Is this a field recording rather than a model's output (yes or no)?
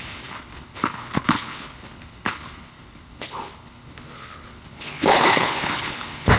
no